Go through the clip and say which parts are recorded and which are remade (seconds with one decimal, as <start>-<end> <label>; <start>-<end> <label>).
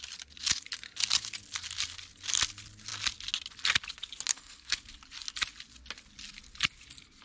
0.0-4.3 recorded; 4.3-4.8 remade; 4.8-7.2 recorded